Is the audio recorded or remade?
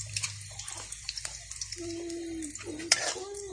remade